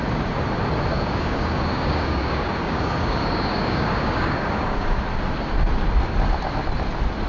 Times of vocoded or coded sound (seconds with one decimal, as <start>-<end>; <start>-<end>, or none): 0.9-5.0